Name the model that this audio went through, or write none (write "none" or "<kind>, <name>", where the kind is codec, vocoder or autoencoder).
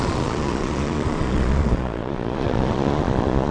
vocoder, Vocos